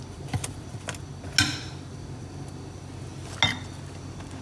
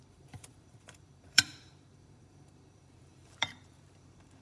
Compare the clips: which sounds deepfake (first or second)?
second